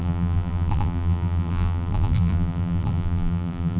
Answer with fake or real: fake